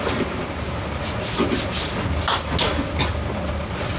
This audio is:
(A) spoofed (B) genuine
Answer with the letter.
B